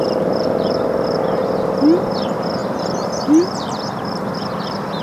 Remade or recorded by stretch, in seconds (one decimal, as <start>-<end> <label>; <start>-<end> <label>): 0.0-1.4 remade; 1.4-2.1 recorded; 2.1-5.0 remade